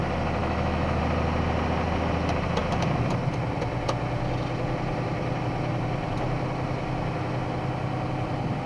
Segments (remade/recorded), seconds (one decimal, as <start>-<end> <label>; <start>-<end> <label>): 0.0-0.4 recorded; 0.4-1.0 remade; 1.0-8.7 recorded